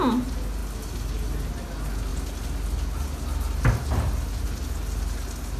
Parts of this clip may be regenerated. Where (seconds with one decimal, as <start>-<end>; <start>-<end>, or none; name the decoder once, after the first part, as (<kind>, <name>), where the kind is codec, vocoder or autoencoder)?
none